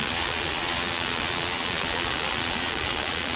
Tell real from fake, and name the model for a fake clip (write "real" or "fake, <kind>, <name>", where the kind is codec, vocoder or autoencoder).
fake, vocoder, Vocos